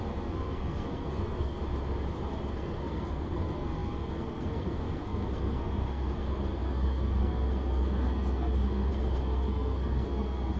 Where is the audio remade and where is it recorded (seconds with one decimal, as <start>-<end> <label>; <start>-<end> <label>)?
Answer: 0.0-1.6 remade; 1.6-2.5 recorded; 2.5-10.6 remade